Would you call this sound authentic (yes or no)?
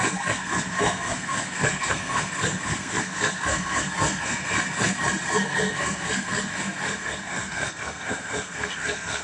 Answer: no